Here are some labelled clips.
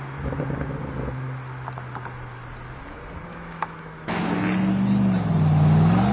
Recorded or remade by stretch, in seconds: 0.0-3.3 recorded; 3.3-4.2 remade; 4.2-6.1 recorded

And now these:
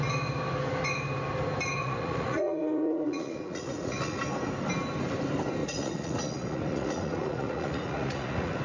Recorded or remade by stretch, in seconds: 0.0-1.8 recorded; 1.8-4.2 remade; 4.2-5.6 recorded; 5.6-8.6 remade

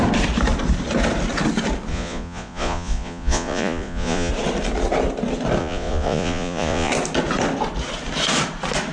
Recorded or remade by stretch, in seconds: 0.0-1.9 recorded; 1.9-4.3 remade; 4.3-5.6 recorded; 5.6-6.9 remade; 6.9-8.9 recorded

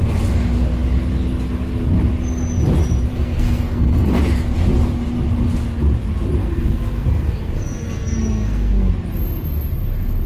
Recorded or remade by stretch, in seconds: 0.0-3.1 recorded; 3.1-4.2 remade; 4.2-6.4 recorded; 6.4-8.9 remade; 8.9-10.3 recorded

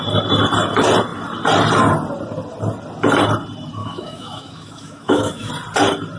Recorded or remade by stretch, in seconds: 0.0-3.8 recorded; 3.8-5.5 remade; 5.5-6.2 recorded

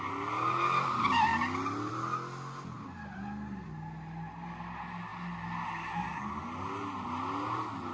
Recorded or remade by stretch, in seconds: 0.0-7.9 recorded